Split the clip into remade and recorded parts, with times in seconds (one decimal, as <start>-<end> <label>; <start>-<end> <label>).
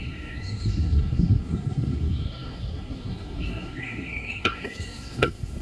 0.0-5.6 remade